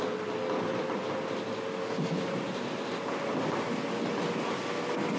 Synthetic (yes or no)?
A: no